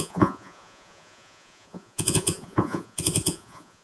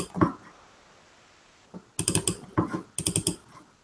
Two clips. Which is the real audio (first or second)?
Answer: second